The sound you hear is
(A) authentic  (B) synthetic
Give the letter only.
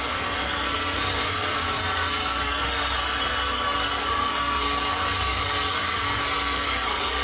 B